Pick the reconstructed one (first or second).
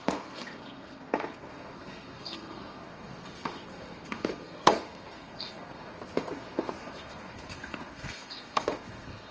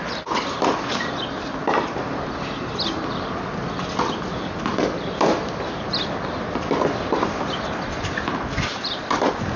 first